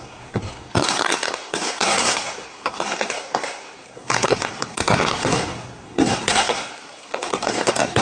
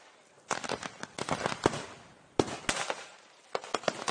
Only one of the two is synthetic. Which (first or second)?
first